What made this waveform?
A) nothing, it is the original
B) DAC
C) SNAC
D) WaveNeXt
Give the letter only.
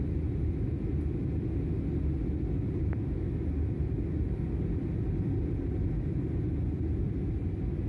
A